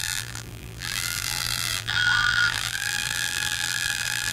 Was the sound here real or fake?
fake